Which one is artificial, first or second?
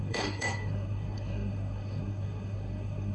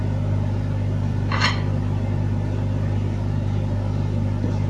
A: first